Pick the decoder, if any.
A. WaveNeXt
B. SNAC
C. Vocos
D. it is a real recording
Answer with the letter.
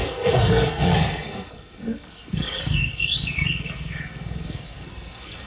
B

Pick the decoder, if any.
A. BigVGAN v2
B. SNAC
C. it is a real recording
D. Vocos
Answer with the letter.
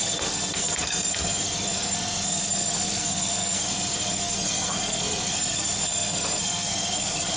B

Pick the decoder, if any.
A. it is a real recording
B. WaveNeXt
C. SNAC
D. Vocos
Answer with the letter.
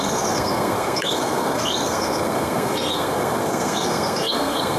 C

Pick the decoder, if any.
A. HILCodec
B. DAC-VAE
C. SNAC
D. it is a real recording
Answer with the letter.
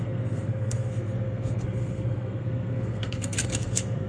C